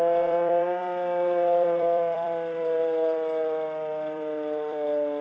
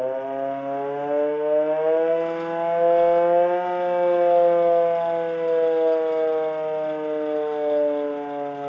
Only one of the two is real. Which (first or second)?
second